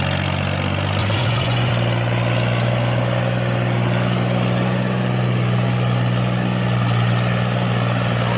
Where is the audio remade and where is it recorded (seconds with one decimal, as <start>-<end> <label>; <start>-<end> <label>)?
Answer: 0.0-1.0 recorded; 1.0-1.7 remade; 1.7-8.4 recorded